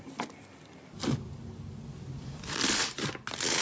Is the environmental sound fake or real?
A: real